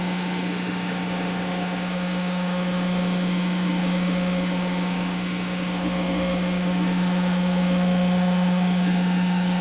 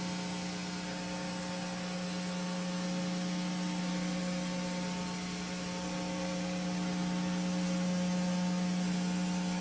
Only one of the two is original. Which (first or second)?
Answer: second